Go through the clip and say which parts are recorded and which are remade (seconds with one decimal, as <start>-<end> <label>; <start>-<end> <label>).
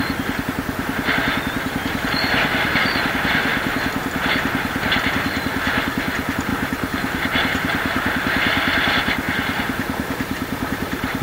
0.0-6.5 recorded; 6.5-11.2 remade